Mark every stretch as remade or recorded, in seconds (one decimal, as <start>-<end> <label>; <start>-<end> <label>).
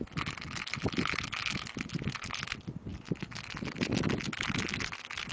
0.0-5.3 recorded